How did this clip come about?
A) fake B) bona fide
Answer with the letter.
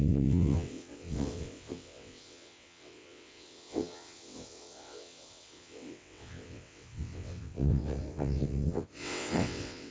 A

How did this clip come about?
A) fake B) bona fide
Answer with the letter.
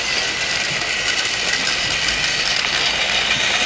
A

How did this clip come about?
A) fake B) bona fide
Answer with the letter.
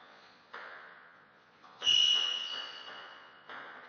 A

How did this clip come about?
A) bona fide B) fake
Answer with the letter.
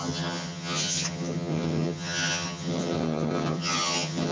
B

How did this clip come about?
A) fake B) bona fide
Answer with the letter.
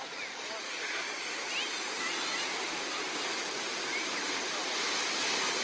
B